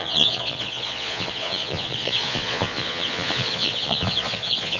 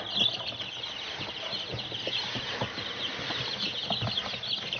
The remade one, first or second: first